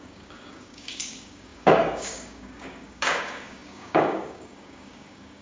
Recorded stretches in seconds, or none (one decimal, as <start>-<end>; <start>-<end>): none